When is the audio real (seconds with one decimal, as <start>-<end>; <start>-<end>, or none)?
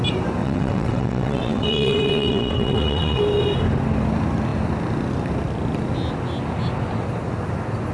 0.0-0.4; 3.2-7.9